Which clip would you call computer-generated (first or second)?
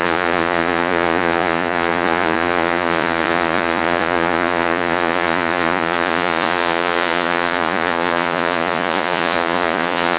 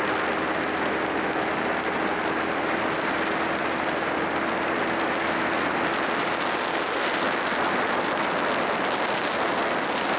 first